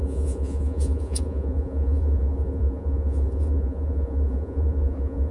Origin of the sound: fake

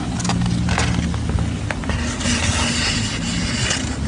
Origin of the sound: real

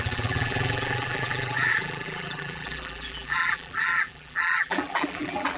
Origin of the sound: fake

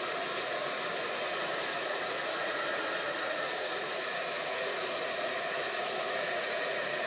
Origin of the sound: fake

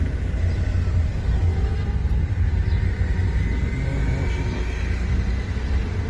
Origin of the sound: real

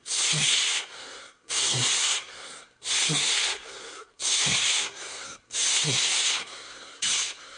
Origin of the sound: fake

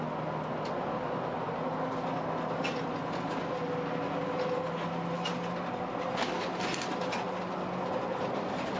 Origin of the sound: real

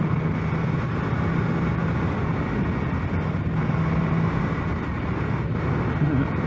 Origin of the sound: real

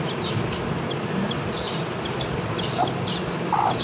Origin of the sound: real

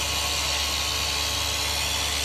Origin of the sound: real